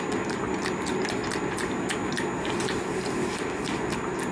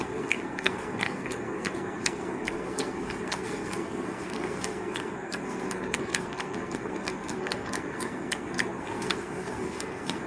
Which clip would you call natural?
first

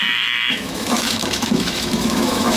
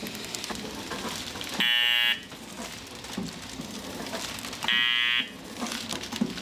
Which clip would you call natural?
second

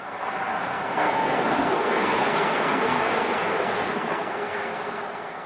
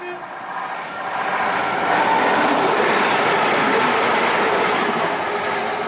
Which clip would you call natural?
second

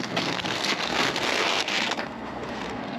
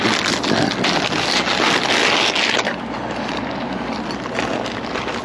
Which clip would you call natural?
second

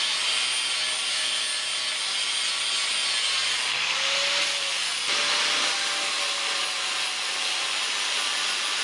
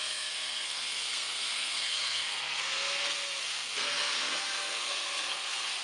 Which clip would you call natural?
first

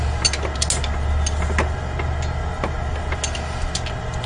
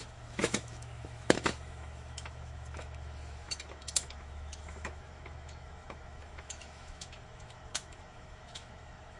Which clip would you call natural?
first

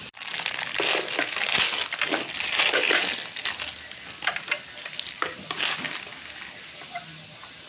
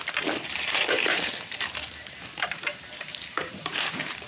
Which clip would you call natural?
first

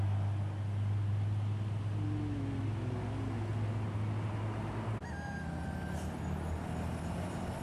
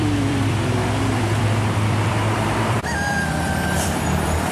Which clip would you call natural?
first